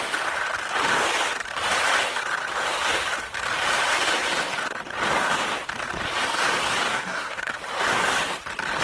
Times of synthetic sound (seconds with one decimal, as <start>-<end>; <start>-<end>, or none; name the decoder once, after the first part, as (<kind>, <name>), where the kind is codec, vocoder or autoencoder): 6.9-7.5 (codec, SNAC)